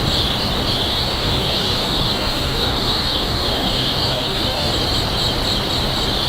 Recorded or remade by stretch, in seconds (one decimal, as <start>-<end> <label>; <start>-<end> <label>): 0.0-0.9 recorded; 0.9-4.7 remade; 4.7-6.3 recorded